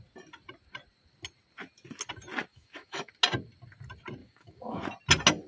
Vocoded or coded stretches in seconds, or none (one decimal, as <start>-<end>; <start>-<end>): 2.5-3.1; 4.2-4.8

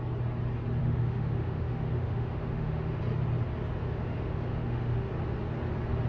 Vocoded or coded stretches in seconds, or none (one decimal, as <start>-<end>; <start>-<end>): 0.8-3.0; 3.8-5.1

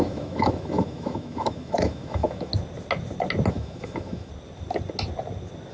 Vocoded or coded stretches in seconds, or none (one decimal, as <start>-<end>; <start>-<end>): 0.0-2.5; 3.5-4.3

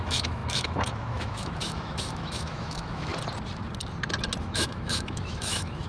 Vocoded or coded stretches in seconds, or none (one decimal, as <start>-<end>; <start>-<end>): 0.0-3.1; 4.4-5.9

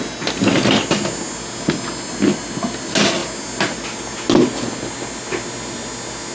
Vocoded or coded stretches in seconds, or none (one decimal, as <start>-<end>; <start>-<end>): none